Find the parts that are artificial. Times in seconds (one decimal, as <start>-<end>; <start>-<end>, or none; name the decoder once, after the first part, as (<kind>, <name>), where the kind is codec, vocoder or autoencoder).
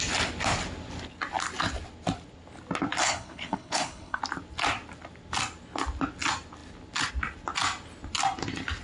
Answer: 3.0-4.2 (codec, HILCodec)